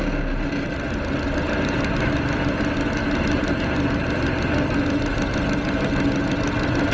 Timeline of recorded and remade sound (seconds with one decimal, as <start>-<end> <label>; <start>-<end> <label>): 0.0-6.9 recorded